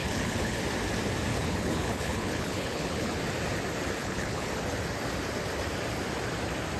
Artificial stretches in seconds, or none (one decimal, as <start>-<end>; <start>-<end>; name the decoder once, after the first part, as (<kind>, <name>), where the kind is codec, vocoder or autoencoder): 0.0-0.6 (codec, HILCodec); 1.3-3.2; 4.0-4.5